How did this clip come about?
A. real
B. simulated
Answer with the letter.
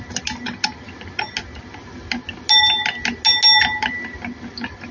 A